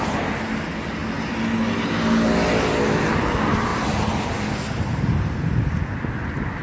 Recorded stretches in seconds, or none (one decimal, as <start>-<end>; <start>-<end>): 0.0-3.7; 5.6-6.6

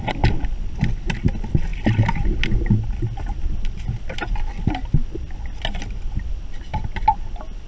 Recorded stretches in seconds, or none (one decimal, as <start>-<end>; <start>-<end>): 0.0-7.7

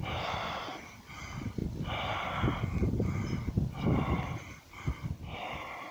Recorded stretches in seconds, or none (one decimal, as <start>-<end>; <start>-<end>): 0.0-5.9